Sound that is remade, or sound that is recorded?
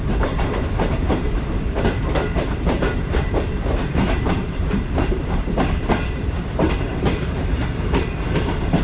remade